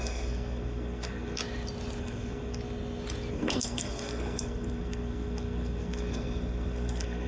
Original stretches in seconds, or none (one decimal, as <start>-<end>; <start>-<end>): 1.4-2.0; 2.6-3.3

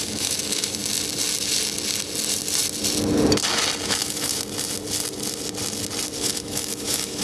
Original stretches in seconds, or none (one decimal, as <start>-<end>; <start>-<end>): 0.8-3.8; 4.3-6.2

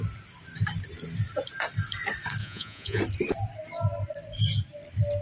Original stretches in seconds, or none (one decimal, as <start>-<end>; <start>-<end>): 0.0-2.4; 3.0-5.2

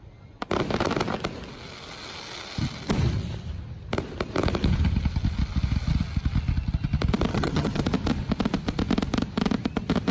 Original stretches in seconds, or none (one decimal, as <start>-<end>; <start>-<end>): 0.0-7.3; 7.8-10.1

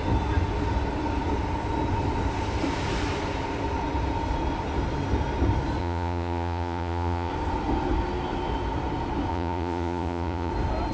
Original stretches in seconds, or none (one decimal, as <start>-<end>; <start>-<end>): 0.0-5.8; 7.3-9.3; 10.5-10.9